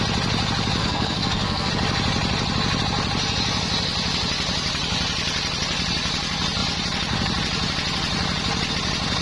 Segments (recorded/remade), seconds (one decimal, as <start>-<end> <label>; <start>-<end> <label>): 0.0-0.8 recorded; 0.8-1.7 remade; 1.7-9.2 recorded